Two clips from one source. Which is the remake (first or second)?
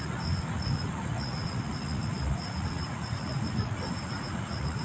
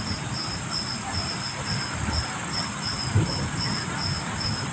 first